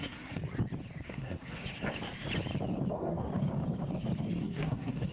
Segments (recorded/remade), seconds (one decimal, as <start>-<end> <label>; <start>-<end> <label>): 0.0-0.4 remade; 0.4-1.1 recorded; 1.1-1.6 remade; 1.6-2.9 recorded; 2.9-3.3 remade; 3.3-4.4 recorded; 4.4-5.1 remade